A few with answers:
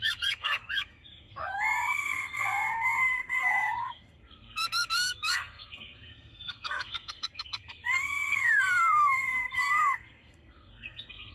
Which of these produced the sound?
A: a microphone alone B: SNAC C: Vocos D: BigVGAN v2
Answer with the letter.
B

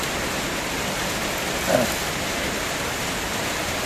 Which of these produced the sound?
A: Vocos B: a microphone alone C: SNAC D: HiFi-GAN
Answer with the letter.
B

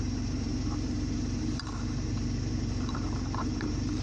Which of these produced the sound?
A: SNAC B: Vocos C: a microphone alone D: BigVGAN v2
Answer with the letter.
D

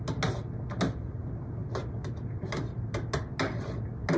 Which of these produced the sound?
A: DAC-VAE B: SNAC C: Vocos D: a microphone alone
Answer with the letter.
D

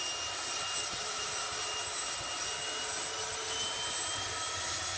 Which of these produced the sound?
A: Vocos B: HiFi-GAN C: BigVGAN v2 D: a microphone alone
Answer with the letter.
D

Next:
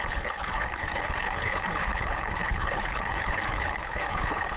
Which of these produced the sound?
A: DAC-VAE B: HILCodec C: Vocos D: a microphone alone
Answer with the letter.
B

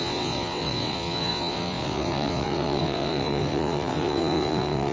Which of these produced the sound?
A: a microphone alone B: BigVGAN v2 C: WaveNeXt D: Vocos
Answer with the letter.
C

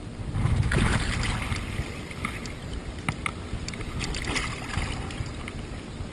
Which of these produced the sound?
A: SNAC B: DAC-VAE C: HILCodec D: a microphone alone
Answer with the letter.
D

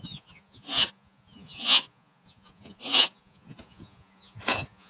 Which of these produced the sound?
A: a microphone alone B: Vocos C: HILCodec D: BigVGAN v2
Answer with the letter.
B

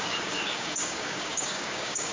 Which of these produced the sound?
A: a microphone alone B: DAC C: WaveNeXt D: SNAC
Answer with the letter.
B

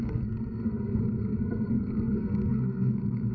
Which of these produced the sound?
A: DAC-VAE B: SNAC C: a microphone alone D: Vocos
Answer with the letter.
B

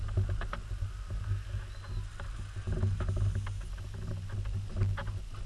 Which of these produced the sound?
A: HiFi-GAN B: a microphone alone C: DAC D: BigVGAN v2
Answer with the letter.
B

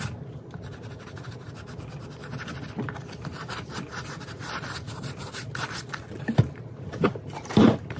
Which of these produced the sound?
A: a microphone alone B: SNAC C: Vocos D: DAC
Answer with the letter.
A